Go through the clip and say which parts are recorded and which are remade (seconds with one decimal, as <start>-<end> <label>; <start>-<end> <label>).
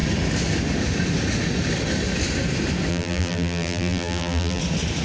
0.0-2.9 recorded; 2.9-4.6 remade; 4.6-5.0 recorded